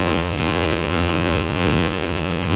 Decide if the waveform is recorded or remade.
remade